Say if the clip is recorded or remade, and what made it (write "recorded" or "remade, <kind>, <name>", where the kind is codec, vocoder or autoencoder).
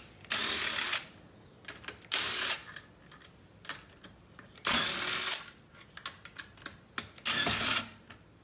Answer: recorded